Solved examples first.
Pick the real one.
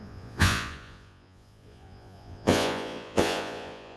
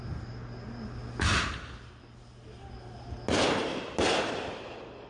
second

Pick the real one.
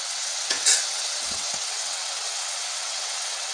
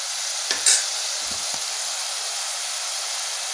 second